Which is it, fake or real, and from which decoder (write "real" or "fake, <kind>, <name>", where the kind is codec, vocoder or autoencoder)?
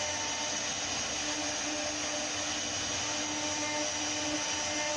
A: real